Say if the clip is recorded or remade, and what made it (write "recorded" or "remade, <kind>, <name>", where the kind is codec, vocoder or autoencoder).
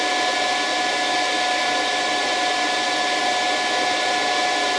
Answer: recorded